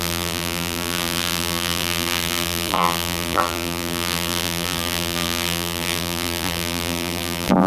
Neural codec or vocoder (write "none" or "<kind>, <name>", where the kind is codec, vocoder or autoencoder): vocoder, BigVGAN v2